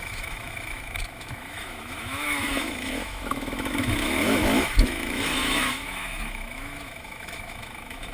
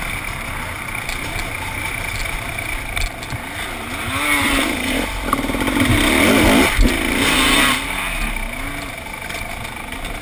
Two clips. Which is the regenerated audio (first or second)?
first